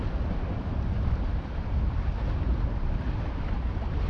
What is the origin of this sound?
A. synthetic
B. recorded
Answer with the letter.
B